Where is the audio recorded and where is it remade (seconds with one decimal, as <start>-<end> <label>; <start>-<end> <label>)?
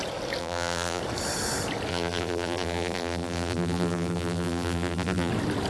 0.0-0.4 recorded; 0.4-1.0 remade; 1.0-1.9 recorded; 1.9-5.3 remade; 5.3-5.7 recorded